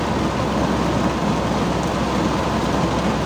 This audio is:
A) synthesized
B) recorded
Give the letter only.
B